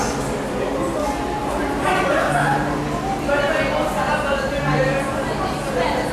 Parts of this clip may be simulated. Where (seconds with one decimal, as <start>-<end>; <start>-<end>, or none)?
none